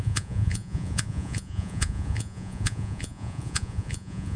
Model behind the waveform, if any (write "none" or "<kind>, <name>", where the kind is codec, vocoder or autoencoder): vocoder, Vocos